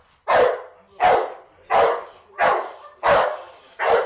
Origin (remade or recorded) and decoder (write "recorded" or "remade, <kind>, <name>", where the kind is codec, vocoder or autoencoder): recorded